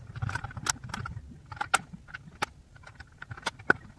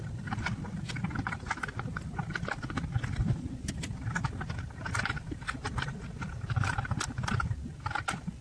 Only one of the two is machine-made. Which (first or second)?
second